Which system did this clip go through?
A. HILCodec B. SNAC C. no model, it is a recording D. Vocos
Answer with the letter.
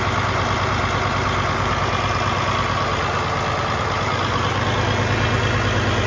C